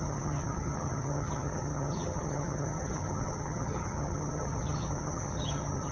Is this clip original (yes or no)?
no